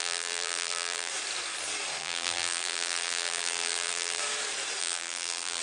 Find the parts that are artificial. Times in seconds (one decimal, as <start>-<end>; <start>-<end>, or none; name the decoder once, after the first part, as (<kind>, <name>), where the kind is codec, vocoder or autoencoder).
0.0-1.1 (vocoder, BigVGAN v2); 2.0-4.2; 4.8-5.6